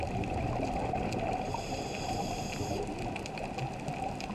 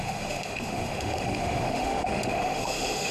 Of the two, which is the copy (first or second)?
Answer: second